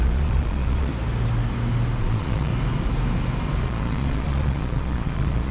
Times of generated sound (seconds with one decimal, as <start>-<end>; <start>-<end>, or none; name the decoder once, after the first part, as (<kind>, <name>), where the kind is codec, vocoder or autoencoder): 0.0-0.9 (vocoder, Vocos); 2.0-2.5; 3.6-5.5